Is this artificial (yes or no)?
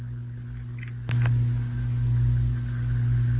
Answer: no